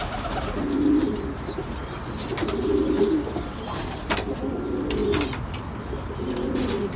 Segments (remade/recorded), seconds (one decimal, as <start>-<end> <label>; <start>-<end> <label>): 0.0-7.0 recorded